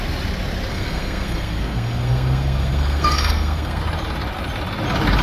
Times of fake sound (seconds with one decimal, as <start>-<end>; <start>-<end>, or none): 0.7-3.8